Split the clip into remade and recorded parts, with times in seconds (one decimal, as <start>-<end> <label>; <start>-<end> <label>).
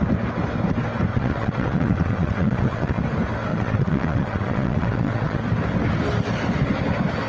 0.0-1.1 recorded; 1.1-3.0 remade; 3.0-3.5 recorded; 3.5-5.4 remade; 5.4-7.3 recorded